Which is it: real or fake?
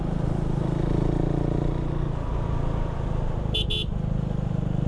real